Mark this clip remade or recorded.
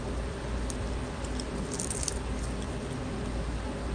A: recorded